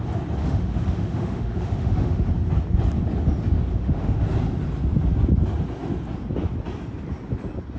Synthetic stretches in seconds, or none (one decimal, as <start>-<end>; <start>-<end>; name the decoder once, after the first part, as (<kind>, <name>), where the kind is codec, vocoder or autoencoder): 0.4-2.3 (autoencoder, DAC-VAE); 3.7-4.2